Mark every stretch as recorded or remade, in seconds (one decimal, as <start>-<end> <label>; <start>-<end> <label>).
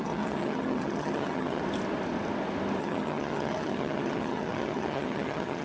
0.0-1.6 remade; 1.6-2.8 recorded; 2.8-5.6 remade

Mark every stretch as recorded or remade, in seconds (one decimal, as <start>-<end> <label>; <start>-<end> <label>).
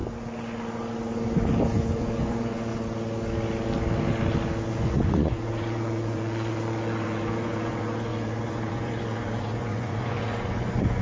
0.0-2.0 recorded; 2.0-2.7 remade; 2.7-4.7 recorded; 4.7-11.0 remade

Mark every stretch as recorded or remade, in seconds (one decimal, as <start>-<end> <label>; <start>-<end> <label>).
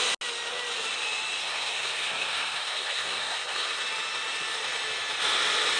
0.0-1.4 recorded; 1.4-3.8 remade; 3.8-5.8 recorded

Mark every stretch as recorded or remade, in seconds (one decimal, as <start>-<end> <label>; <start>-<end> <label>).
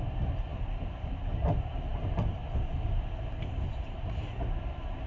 0.0-5.1 recorded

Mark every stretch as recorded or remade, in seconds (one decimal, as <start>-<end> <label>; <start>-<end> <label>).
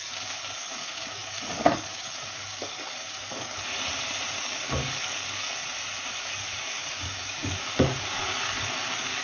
0.0-3.7 remade; 3.7-4.4 recorded; 4.4-5.6 remade; 5.6-6.2 recorded; 6.2-9.2 remade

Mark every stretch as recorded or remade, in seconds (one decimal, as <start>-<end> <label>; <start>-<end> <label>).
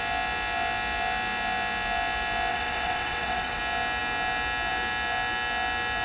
0.0-2.5 recorded; 2.5-3.6 remade; 3.6-6.0 recorded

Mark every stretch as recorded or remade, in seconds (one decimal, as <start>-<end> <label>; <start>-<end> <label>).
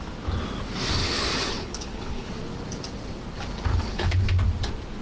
0.0-1.0 recorded; 1.0-2.3 remade; 2.3-3.7 recorded; 3.7-4.2 remade; 4.2-5.0 recorded